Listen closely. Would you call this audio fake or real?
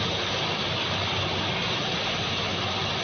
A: real